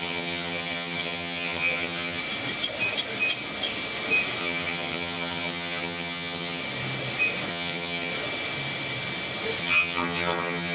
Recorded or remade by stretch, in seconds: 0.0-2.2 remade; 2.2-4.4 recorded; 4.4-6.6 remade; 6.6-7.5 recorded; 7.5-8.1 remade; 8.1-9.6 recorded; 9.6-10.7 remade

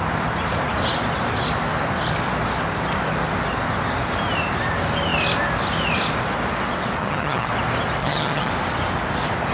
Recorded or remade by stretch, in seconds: 0.0-7.0 recorded; 7.0-7.5 remade; 7.5-8.0 recorded; 8.0-8.5 remade; 8.5-9.5 recorded

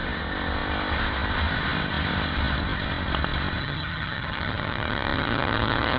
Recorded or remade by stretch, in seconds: 0.0-3.6 recorded; 3.6-6.0 remade

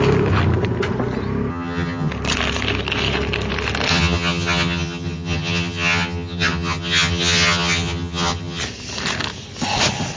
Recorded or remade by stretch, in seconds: 0.0-1.5 recorded; 1.5-2.1 remade; 2.1-3.9 recorded; 3.9-8.6 remade; 8.6-10.2 recorded

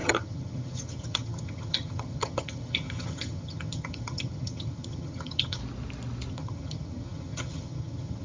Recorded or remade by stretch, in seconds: 0.0-5.6 remade; 5.6-6.3 recorded; 6.3-8.2 remade

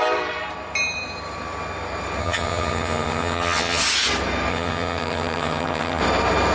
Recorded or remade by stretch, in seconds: 0.0-2.2 recorded; 2.2-3.8 remade; 3.8-4.5 recorded; 4.5-6.0 remade; 6.0-6.5 recorded